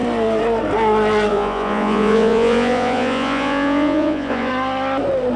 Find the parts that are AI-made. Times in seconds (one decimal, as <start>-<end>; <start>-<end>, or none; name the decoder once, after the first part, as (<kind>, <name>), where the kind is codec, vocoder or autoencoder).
1.3-4.5 (vocoder, Vocos)